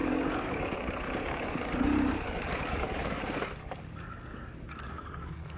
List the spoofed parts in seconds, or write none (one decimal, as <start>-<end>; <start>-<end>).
0.0-5.6